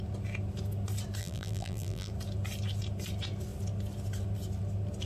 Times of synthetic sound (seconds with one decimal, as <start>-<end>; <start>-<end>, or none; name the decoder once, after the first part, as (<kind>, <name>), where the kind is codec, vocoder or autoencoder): 1.2-2.1 (vocoder, BigVGAN v2)